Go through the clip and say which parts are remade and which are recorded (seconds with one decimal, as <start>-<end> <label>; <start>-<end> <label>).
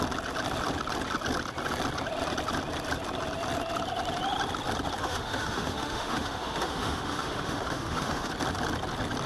0.0-5.0 recorded; 5.0-8.3 remade; 8.3-9.3 recorded